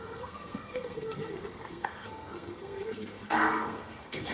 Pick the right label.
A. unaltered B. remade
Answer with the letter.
B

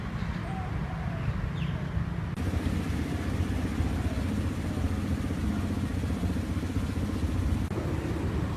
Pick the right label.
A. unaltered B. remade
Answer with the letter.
A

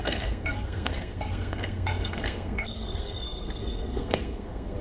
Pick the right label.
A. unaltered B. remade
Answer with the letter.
B